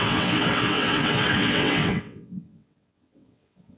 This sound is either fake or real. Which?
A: fake